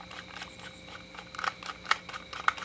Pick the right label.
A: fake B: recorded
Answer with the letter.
B